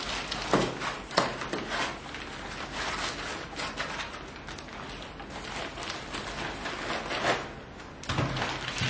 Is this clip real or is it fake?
real